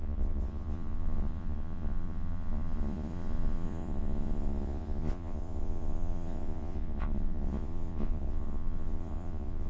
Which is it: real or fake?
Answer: fake